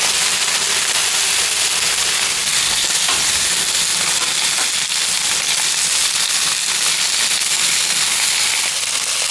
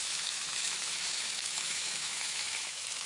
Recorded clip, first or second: first